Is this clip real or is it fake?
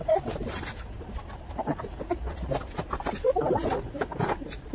fake